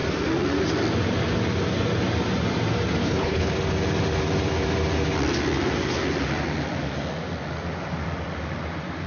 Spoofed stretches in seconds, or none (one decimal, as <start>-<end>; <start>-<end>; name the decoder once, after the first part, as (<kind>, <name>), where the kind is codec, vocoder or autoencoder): 3.0-3.5 (codec, HILCodec)